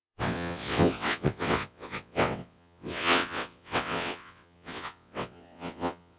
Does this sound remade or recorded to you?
remade